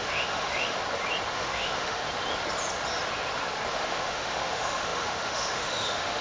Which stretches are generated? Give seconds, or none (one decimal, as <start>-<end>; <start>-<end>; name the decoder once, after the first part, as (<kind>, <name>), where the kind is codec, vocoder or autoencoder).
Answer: 0.0-0.8 (autoencoder, DAC-VAE); 1.3-2.0; 3.7-6.2